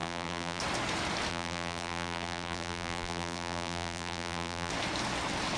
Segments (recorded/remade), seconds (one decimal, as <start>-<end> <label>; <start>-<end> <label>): 0.0-0.6 remade; 0.6-1.3 recorded; 1.3-4.7 remade; 4.7-5.6 recorded